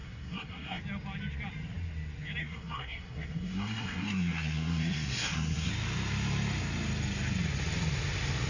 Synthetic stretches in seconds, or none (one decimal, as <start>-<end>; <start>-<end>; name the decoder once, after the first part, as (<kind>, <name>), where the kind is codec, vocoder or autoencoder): 0.0-0.8 (codec, SNAC); 2.4-5.7